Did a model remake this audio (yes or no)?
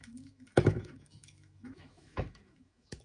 yes